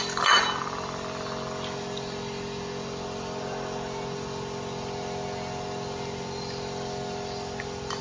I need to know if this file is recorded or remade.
recorded